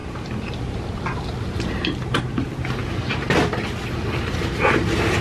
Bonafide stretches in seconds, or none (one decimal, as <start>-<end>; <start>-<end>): 2.2-5.2